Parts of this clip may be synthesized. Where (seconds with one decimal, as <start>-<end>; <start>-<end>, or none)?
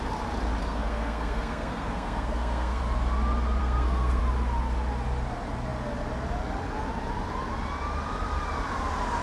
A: 0.6-2.8; 3.6-4.2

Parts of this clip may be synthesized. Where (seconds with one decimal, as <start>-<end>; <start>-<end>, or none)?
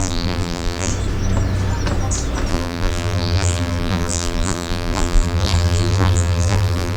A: 0.0-0.9; 2.5-7.0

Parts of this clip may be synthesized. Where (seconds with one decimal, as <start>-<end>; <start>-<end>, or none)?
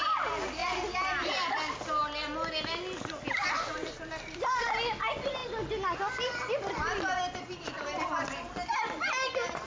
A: none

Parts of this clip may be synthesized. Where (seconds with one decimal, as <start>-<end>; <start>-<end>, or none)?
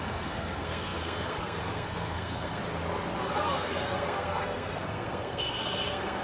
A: 0.0-2.6; 3.2-6.2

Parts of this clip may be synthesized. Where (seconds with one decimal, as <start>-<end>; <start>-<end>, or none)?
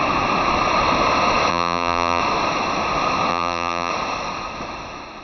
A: 1.5-2.2; 3.3-3.9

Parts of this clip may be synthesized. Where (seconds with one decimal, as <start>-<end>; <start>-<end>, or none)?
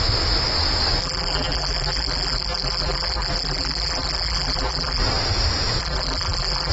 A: 1.0-5.0; 5.8-6.7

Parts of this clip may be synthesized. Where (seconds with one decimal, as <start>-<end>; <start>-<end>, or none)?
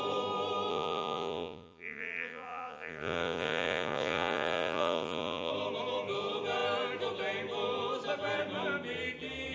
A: 0.7-5.5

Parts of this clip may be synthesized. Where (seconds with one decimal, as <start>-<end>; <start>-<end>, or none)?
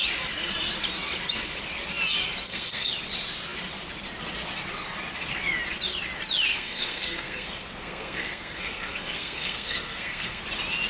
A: 2.4-2.9; 6.5-10.4